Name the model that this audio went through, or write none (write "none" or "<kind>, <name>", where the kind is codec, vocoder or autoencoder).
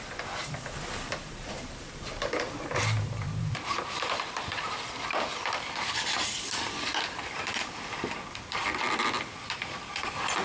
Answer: vocoder, BigVGAN v2